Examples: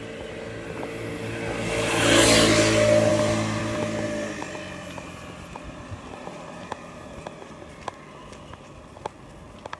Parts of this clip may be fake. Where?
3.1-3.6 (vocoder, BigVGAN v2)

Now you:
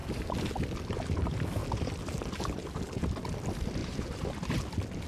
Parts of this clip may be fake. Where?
0.0-0.5 (vocoder, BigVGAN v2); 3.8-4.6

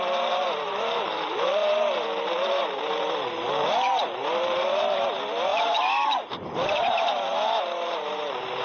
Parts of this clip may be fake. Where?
0.0-8.6 (vocoder, BigVGAN v2)

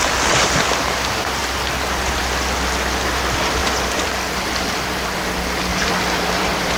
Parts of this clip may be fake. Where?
3.6-4.1 (vocoder, BigVGAN v2); 5.7-6.8